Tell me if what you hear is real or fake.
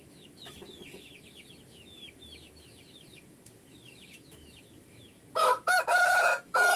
fake